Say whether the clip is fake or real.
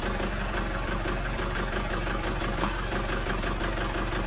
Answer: real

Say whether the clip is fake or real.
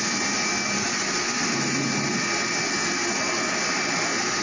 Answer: real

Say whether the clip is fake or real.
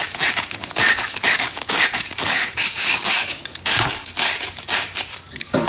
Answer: fake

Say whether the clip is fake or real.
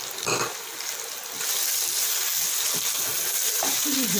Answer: real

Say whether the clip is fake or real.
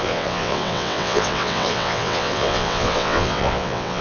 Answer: fake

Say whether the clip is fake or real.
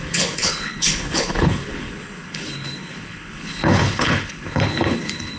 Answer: fake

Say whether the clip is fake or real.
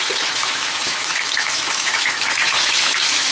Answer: fake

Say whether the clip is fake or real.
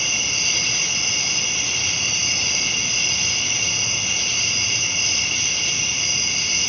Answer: real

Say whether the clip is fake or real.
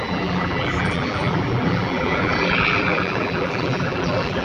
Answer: fake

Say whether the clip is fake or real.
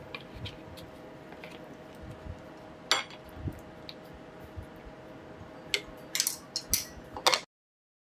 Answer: real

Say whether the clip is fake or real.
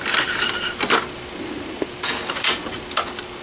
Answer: real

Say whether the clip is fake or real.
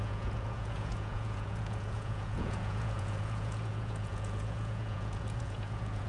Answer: fake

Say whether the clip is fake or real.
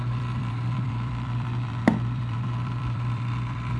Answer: fake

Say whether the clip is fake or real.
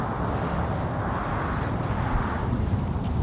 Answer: real